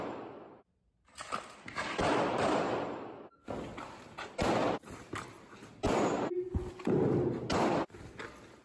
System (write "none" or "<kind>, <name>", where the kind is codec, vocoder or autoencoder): none